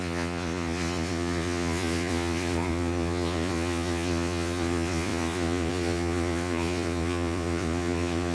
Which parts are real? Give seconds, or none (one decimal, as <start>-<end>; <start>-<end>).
none

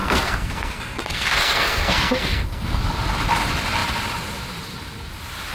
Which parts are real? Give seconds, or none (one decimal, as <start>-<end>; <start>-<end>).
2.8-5.5